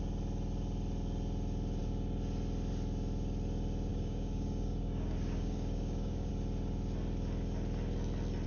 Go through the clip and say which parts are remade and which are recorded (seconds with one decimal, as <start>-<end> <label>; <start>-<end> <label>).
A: 0.0-3.9 recorded; 3.9-6.3 remade; 6.3-8.5 recorded